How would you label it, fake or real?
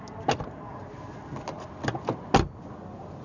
real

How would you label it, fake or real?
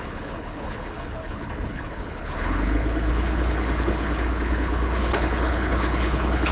fake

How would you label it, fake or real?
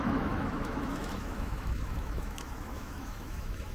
fake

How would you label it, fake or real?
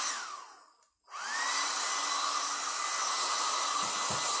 real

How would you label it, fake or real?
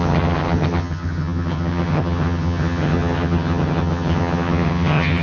fake